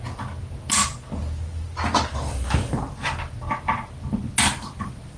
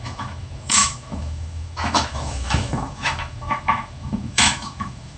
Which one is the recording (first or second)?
first